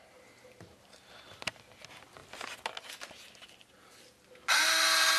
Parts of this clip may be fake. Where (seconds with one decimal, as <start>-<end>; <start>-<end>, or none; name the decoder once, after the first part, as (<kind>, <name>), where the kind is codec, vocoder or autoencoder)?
none

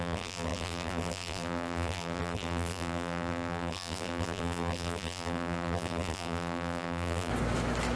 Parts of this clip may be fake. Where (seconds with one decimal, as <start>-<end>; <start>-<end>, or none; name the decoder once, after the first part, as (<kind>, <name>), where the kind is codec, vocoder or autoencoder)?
0.0-7.3 (vocoder, BigVGAN v2)

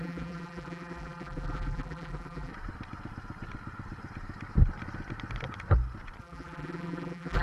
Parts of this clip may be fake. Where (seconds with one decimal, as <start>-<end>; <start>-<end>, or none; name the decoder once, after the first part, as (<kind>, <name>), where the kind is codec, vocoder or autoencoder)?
0.0-2.5 (vocoder, BigVGAN v2); 6.2-7.4

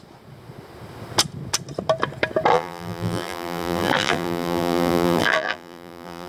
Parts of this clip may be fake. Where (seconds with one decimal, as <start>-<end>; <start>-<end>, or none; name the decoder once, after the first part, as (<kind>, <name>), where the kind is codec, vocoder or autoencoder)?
2.5-6.3 (vocoder, BigVGAN v2)

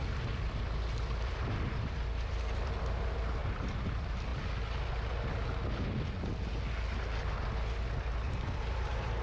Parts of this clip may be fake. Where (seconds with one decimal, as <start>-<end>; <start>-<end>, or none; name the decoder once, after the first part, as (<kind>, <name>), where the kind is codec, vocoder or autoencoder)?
0.0-3.4 (vocoder, BigVGAN v2); 3.9-4.3; 8.4-9.2

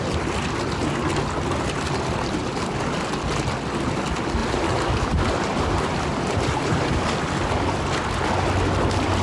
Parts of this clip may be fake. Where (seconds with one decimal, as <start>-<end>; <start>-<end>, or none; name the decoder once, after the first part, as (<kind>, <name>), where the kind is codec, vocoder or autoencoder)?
4.4-7.0 (vocoder, BigVGAN v2)

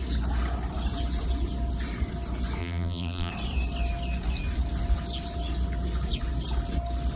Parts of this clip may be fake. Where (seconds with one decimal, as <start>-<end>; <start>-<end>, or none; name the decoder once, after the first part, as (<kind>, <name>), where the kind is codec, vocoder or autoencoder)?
2.6-3.3 (vocoder, BigVGAN v2)

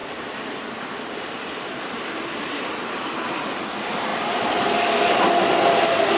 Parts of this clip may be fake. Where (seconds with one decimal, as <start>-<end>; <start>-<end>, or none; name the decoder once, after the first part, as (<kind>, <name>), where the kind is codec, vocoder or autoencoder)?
0.0-3.6 (vocoder, BigVGAN v2)